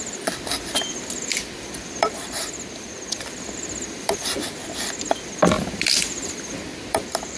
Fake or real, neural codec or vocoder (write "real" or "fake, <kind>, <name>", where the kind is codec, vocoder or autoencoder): fake, vocoder, BigVGAN v2